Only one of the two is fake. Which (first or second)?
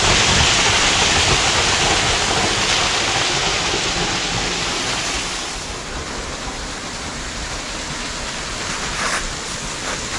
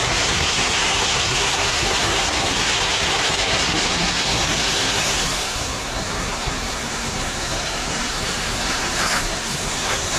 second